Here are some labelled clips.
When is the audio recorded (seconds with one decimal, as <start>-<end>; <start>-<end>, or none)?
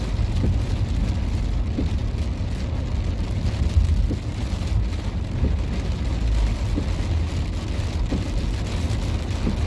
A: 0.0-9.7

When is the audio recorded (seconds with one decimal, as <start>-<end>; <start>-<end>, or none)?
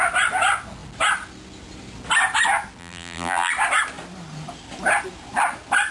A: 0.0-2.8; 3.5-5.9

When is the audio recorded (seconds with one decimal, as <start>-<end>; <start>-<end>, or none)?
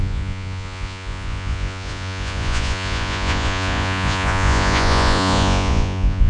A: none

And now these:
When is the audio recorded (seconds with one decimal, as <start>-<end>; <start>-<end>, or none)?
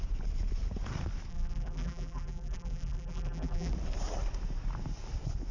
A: 0.0-1.3; 3.7-5.5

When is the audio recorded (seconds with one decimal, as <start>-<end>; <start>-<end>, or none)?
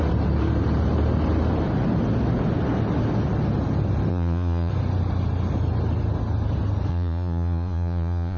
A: 0.0-4.1; 4.7-6.9